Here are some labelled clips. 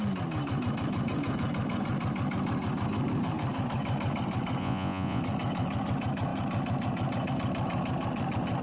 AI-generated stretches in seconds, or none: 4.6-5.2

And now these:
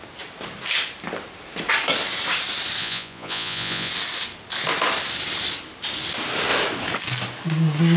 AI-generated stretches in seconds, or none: 2.8-3.9

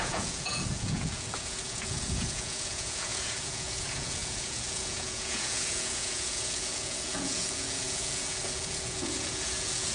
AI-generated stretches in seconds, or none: 0.0-9.9

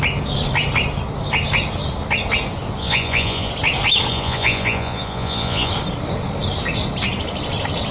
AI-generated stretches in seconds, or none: 2.8-3.5; 4.1-5.7

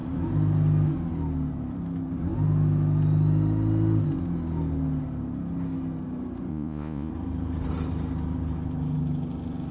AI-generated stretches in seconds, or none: 6.5-7.1

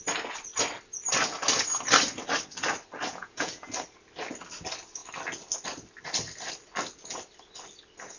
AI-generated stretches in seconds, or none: 3.1-3.7